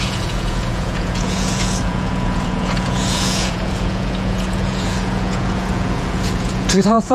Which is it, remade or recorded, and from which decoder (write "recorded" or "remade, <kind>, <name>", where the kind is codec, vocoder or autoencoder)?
remade, vocoder, Vocos